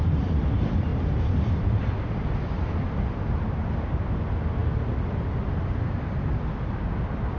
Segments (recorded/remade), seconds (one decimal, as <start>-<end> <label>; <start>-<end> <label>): 0.0-0.9 recorded; 0.9-2.8 remade; 2.8-7.4 recorded